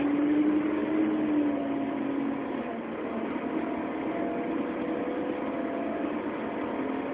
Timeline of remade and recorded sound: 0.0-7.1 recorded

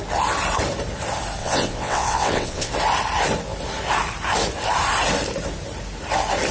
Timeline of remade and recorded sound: 0.0-1.4 recorded; 1.4-2.7 remade; 2.7-6.5 recorded

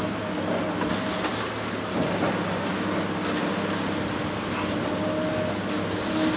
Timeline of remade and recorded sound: 0.0-6.4 recorded